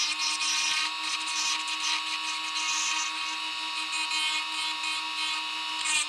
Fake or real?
real